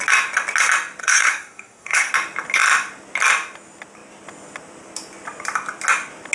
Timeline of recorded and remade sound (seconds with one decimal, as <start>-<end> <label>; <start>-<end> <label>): 0.0-1.0 recorded; 1.0-2.1 remade; 2.1-6.3 recorded

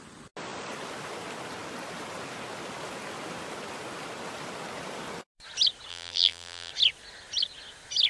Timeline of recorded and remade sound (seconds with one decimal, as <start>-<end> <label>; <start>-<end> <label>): 0.0-5.9 recorded; 5.9-6.7 remade; 6.7-8.1 recorded

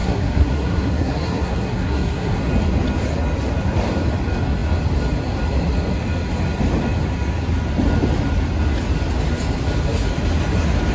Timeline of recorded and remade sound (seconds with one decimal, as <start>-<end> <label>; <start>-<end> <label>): 0.0-2.4 remade; 2.4-10.9 recorded